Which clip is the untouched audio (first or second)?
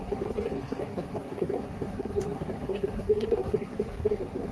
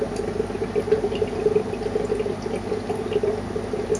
second